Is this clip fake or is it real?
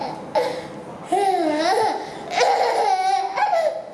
real